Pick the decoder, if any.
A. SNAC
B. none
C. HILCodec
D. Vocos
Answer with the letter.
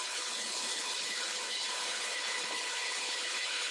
C